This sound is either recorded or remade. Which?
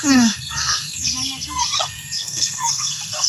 remade